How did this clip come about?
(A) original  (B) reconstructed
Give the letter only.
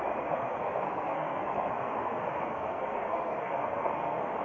B